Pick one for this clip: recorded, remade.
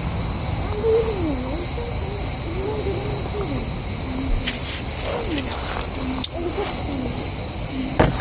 recorded